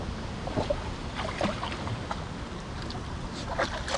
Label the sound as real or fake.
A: real